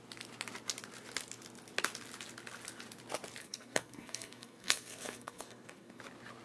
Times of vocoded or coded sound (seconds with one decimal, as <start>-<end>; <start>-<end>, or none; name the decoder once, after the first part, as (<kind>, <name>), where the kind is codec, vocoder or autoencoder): 3.4-6.0 (codec, SNAC)